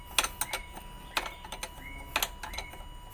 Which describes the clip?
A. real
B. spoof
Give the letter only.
A